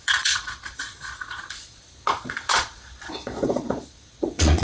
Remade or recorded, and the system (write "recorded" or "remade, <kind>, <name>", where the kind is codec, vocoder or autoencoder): remade, vocoder, Vocos